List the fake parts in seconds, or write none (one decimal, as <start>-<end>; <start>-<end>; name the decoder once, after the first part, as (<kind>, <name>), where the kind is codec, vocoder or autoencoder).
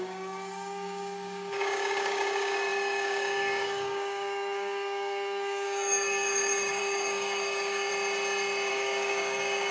0.0-7.9 (codec, DAC); 8.7-9.7